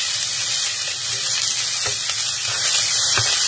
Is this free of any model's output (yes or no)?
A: yes